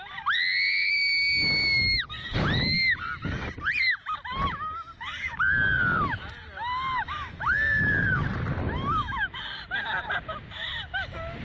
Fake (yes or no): no